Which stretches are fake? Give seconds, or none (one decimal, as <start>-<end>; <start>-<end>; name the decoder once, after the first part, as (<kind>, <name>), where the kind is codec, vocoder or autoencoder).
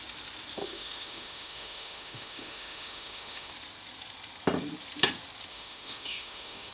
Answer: 0.6-3.5 (autoencoder, DAC-VAE); 5.5-6.7